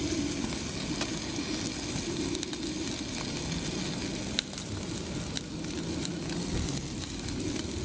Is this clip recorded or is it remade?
recorded